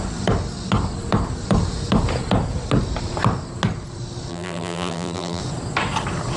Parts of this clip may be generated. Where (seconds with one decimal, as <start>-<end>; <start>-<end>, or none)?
4.3-5.4